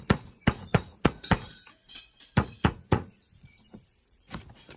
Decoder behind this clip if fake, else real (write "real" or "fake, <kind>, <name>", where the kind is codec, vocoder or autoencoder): fake, vocoder, Vocos